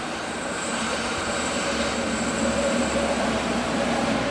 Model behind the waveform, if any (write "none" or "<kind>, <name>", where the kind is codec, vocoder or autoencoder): vocoder, BigVGAN v2